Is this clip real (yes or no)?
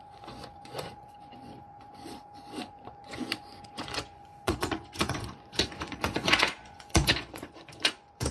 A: no